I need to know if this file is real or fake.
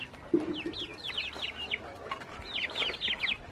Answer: real